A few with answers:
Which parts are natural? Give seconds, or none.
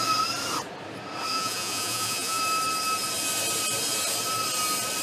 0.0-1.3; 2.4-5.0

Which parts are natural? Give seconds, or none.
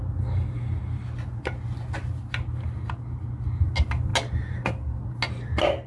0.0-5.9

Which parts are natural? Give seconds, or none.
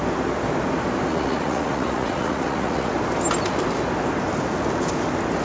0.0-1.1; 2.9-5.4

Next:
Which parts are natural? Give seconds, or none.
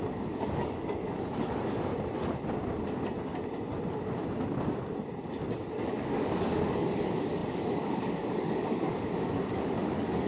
1.9-5.7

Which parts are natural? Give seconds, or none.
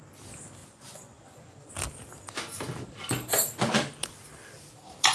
0.0-0.6; 1.7-5.1